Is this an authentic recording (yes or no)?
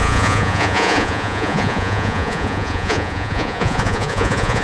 no